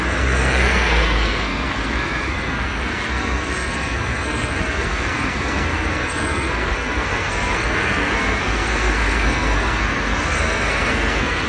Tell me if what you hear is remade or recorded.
remade